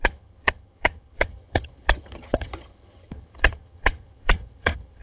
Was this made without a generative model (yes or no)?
no